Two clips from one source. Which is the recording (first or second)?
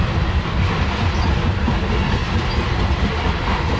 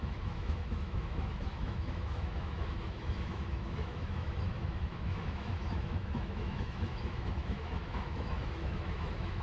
first